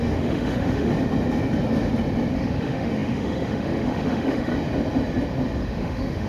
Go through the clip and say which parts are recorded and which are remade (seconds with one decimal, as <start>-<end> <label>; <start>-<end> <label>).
0.0-0.9 remade; 0.9-2.3 recorded; 2.3-4.5 remade; 4.5-5.6 recorded; 5.6-6.3 remade